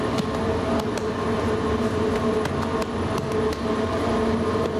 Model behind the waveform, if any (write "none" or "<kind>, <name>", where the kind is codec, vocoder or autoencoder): none